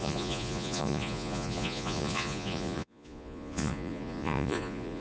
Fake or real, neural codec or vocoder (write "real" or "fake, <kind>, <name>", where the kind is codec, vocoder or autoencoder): fake, vocoder, Vocos